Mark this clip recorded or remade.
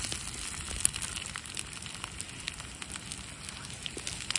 recorded